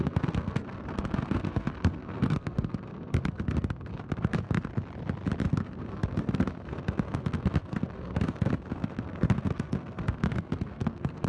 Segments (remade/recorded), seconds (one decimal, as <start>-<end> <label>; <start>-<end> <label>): 0.0-4.7 remade; 4.7-5.5 recorded; 5.5-11.3 remade